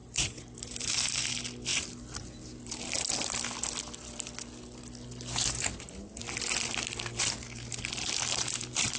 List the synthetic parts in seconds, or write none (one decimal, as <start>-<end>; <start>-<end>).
0.0-0.9